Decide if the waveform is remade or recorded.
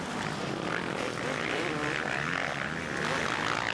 recorded